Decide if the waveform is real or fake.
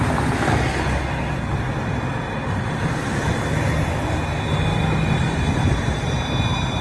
real